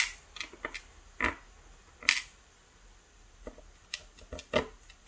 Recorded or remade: recorded